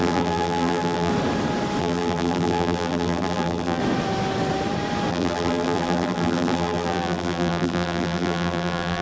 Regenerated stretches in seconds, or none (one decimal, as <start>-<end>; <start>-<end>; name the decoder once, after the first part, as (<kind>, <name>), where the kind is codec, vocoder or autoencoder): 0.0-1.1 (vocoder, BigVGAN v2); 1.8-3.8; 5.1-9.0